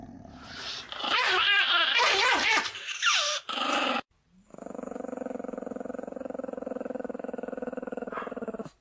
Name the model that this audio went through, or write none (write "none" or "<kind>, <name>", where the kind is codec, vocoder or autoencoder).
vocoder, BigVGAN v2